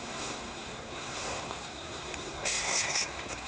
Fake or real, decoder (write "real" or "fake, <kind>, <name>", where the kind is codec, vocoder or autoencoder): fake, codec, SNAC